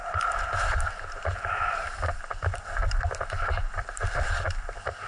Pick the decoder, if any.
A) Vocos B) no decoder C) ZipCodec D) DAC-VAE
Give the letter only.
B